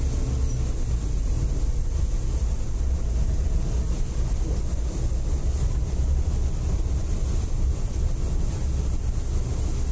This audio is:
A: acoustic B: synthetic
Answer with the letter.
A